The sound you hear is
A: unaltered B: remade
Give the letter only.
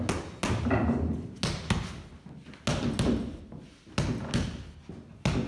A